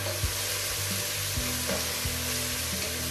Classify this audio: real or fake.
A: real